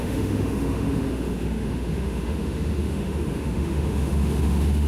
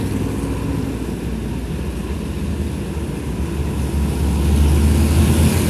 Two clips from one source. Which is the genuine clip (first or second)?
second